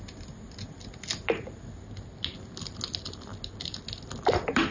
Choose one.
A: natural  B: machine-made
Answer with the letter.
A